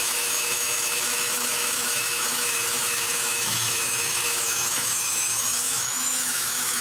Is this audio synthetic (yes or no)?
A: yes